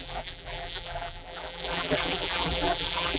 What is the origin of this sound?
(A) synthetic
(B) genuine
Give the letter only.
A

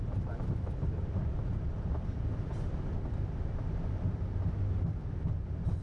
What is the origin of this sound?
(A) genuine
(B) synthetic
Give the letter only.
B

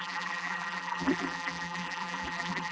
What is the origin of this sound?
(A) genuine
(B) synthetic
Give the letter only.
B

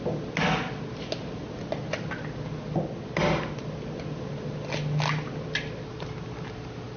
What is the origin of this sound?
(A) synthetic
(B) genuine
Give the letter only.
B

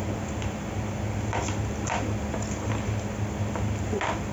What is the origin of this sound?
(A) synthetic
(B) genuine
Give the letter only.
B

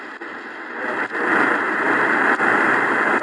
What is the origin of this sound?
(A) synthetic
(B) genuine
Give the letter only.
A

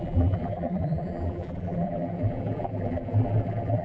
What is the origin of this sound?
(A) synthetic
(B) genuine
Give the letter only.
A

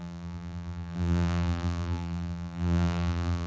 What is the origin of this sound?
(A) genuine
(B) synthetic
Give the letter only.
B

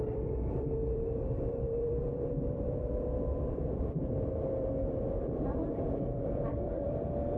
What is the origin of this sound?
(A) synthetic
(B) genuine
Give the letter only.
A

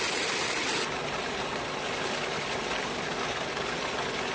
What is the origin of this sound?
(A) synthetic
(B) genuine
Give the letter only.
B